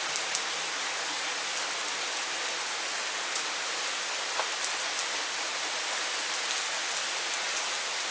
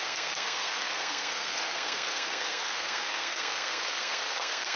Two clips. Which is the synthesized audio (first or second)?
second